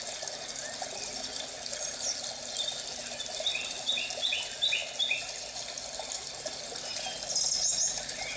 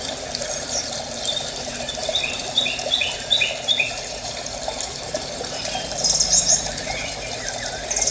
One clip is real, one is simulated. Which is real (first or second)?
first